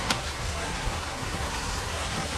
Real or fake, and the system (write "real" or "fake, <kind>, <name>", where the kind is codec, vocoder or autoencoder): fake, codec, SNAC